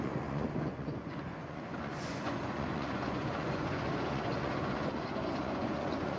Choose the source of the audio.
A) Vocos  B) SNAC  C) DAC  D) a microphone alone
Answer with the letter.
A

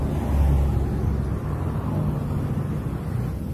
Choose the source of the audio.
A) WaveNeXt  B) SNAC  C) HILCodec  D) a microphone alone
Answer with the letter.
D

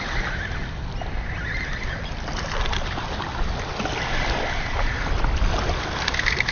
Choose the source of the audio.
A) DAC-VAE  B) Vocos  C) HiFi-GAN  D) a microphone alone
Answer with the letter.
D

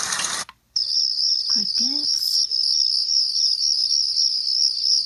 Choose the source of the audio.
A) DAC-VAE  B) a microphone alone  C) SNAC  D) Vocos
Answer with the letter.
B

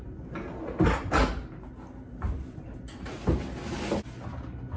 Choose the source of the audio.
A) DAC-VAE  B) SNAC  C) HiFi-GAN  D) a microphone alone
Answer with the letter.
D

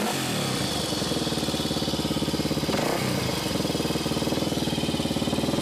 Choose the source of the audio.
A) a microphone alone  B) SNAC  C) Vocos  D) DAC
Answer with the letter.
A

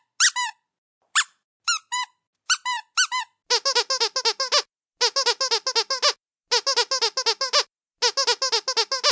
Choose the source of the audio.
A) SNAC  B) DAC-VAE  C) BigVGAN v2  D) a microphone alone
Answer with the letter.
D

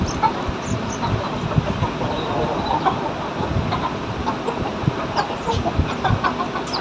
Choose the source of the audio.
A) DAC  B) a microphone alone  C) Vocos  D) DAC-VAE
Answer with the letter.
B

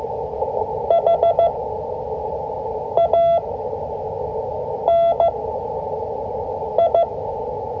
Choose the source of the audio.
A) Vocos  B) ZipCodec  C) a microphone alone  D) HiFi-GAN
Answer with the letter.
C